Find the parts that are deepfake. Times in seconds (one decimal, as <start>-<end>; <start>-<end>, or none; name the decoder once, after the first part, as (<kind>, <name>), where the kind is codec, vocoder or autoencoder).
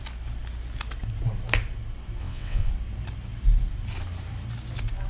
2.2-2.7 (vocoder, WaveNeXt)